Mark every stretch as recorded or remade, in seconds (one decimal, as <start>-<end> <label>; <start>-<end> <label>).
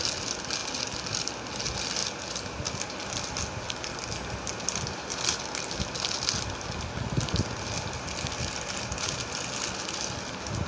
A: 0.0-10.7 recorded